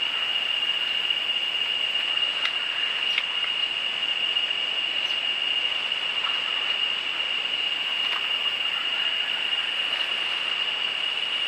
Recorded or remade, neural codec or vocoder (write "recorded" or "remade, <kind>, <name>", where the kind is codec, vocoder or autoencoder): recorded